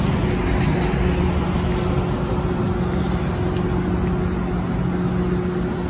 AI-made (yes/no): no